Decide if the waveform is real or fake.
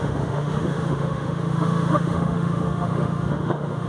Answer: fake